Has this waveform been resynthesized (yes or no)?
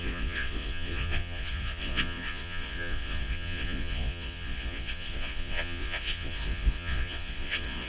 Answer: yes